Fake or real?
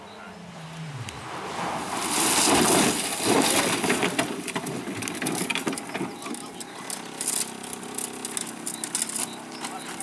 real